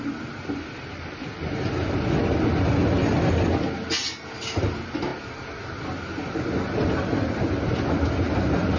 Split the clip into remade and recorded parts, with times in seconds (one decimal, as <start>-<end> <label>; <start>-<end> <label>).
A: 0.0-8.8 recorded